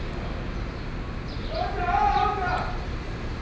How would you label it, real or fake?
real